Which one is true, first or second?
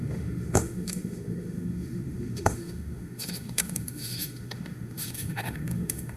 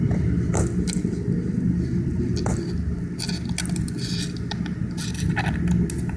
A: second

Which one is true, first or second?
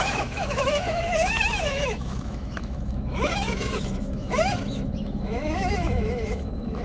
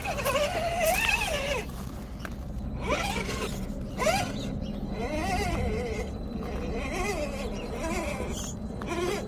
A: second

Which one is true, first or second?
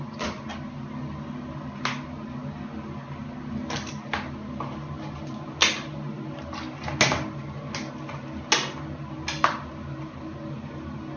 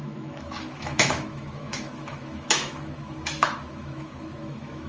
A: first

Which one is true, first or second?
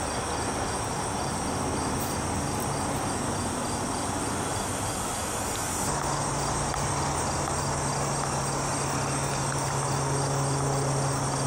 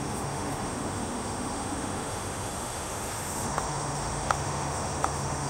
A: first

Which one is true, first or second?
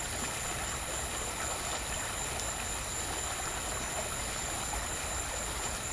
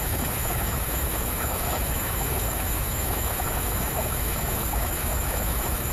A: first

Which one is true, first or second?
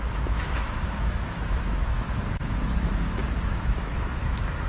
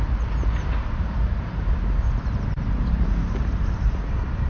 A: second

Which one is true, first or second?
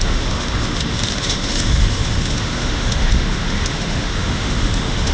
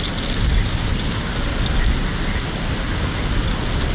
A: second